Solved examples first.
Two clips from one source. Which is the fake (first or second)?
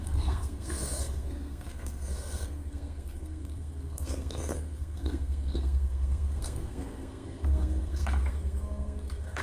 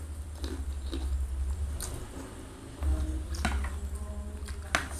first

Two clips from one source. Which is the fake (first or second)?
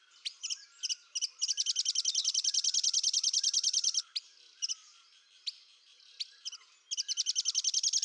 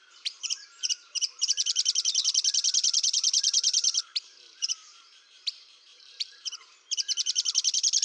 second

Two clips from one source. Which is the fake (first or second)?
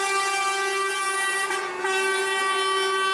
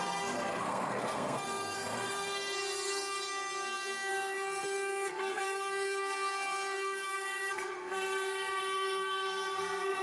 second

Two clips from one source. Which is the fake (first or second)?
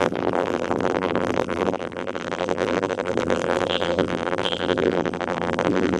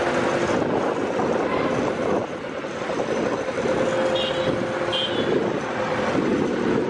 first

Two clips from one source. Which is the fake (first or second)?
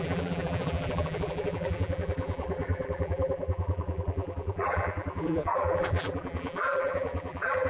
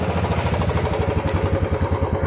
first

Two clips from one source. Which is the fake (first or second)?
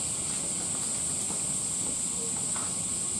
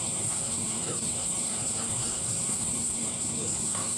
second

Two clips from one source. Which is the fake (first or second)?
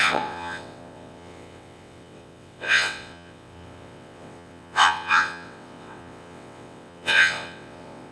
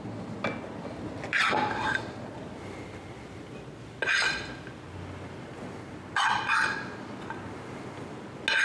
first